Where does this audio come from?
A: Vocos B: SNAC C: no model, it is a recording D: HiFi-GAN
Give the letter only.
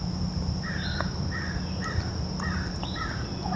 C